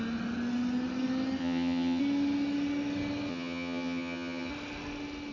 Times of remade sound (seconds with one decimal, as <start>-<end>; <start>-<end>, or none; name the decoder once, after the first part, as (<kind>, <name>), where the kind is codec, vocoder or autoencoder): 1.4-2.0 (vocoder, HiFi-GAN); 3.3-4.5